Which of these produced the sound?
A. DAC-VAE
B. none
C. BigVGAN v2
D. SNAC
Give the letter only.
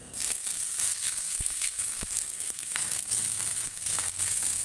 D